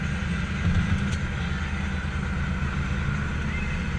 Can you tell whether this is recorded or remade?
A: recorded